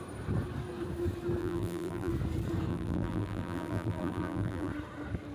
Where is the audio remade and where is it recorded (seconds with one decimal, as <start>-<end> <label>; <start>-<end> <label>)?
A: 0.0-1.4 recorded; 1.4-2.1 remade; 2.1-2.7 recorded; 2.7-4.7 remade; 4.7-5.3 recorded